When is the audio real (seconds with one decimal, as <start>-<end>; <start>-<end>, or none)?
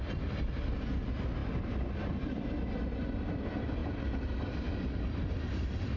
0.0-6.0